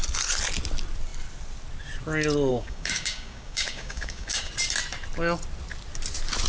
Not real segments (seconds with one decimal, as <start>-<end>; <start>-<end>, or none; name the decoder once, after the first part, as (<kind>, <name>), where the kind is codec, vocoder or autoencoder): 2.5-4.5 (codec, DAC)